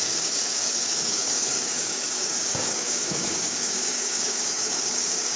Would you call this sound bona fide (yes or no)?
no